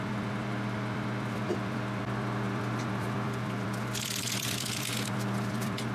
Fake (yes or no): yes